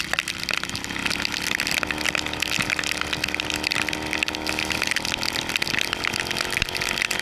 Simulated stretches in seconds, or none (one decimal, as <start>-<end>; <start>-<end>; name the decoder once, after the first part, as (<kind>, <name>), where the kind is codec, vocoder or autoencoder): none

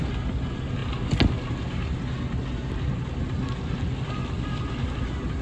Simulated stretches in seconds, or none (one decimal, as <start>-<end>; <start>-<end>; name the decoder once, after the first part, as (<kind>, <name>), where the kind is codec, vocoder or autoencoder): none